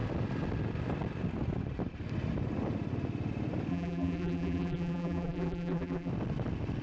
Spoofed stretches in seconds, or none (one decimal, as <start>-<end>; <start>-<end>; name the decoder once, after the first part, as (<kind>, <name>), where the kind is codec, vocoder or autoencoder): 3.7-6.1 (vocoder, BigVGAN v2)